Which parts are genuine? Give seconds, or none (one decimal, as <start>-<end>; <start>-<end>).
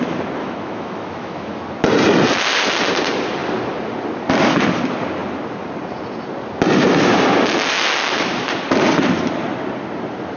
0.0-0.4; 1.6-10.4